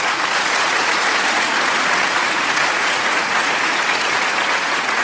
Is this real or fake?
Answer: fake